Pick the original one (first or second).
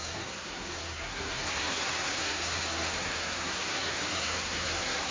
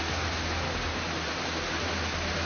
second